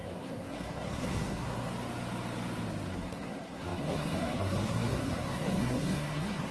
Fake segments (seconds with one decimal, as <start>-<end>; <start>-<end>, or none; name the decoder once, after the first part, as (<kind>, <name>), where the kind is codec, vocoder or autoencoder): 0.0-1.7 (codec, SNAC); 2.9-6.5